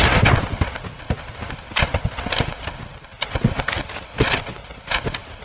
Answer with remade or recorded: recorded